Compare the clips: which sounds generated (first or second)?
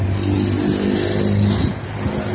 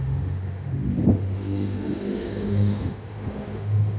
second